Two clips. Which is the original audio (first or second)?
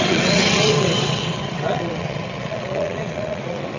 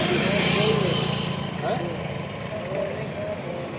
second